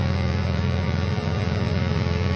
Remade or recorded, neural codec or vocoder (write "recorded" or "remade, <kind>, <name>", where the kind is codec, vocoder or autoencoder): remade, vocoder, BigVGAN v2